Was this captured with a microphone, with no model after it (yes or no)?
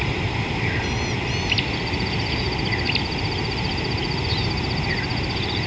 yes